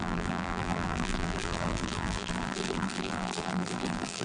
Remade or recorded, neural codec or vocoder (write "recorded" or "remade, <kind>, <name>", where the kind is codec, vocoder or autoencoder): remade, vocoder, BigVGAN v2